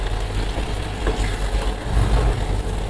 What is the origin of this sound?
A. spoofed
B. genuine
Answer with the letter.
B